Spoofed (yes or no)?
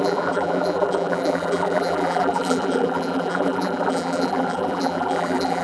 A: yes